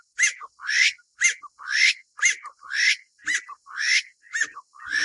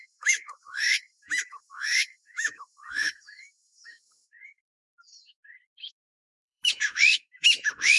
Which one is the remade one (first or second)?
second